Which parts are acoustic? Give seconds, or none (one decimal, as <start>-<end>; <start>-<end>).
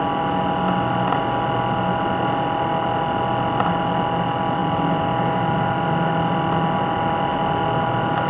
0.0-8.3